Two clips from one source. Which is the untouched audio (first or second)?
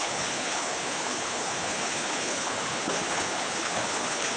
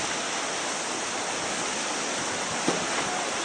second